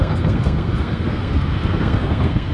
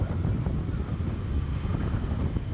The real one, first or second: second